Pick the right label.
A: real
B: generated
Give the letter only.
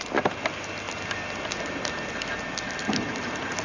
A